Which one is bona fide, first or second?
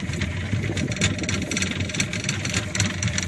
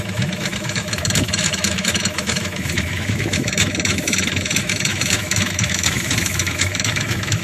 first